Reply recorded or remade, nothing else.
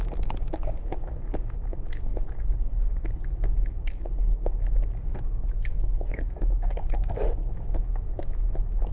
remade